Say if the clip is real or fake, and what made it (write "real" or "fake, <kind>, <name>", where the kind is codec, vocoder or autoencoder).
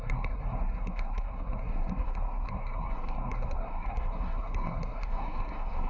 fake, codec, SNAC